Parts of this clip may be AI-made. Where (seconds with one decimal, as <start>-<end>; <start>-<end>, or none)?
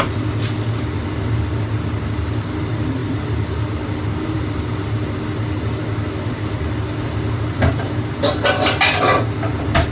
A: none